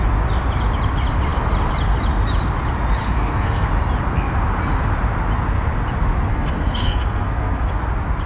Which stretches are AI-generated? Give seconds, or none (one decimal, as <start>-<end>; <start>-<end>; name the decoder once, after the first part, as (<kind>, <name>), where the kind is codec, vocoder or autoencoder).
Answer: 3.0-3.7 (codec, SNAC); 6.3-7.8